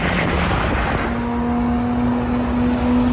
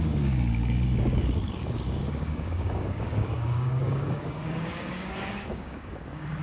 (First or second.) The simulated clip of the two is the second